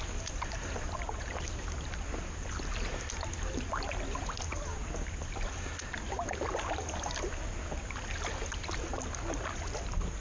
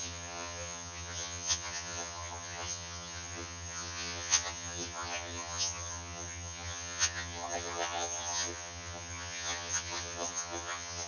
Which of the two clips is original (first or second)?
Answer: first